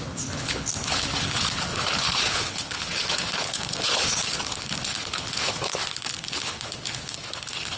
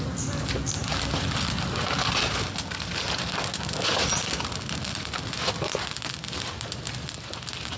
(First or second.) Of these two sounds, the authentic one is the second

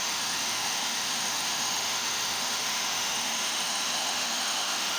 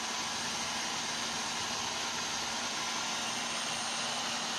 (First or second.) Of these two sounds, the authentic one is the second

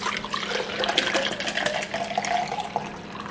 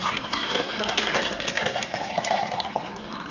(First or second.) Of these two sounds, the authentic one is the first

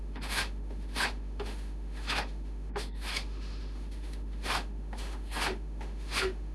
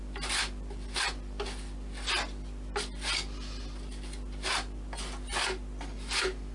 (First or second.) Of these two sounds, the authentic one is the second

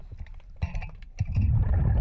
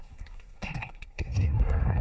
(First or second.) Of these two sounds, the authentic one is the first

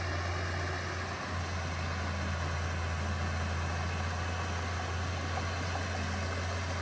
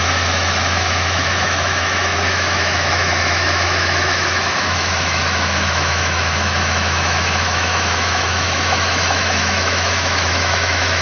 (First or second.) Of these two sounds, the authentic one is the first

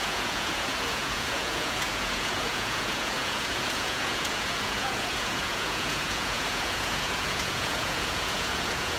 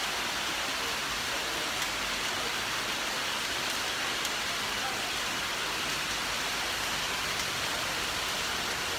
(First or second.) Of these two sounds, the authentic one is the second